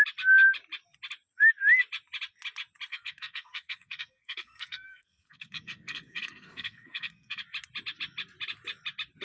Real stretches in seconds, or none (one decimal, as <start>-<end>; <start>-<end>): 0.0-2.9; 7.4-9.2